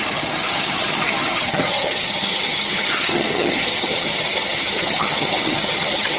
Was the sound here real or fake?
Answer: fake